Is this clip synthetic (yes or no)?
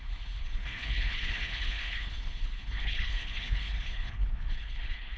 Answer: yes